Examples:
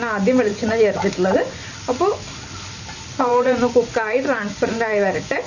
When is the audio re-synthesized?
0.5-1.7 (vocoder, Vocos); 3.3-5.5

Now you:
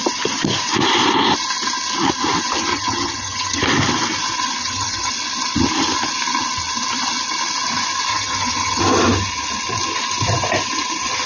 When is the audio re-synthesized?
2.7-3.6 (vocoder, HiFi-GAN); 4.6-5.1; 8.1-8.8

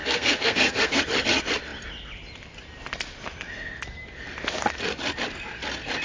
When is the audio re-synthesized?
0.0-1.0 (codec, SNAC)

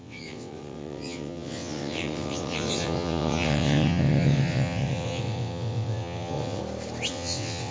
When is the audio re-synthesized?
0.0-6.6 (vocoder, WaveNeXt); 7.1-7.7

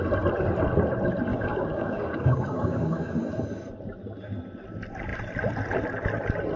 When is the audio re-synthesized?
1.3-3.3 (codec, DAC)

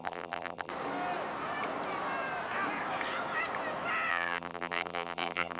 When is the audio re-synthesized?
0.0-0.7 (vocoder, BigVGAN v2); 4.1-5.6

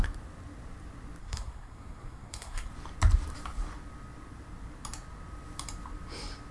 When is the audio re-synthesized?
1.2-2.7 (codec, SNAC)

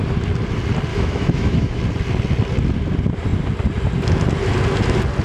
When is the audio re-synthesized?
0.9-1.8 (autoencoder, DAC-VAE)